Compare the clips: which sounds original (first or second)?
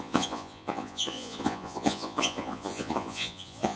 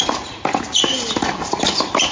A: second